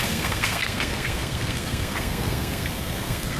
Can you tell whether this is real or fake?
fake